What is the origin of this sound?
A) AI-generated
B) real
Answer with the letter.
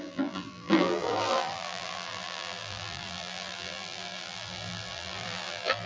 A